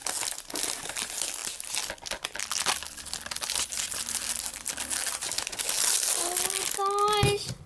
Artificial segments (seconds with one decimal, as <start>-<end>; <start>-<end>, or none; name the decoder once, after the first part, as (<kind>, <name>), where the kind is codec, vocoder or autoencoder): none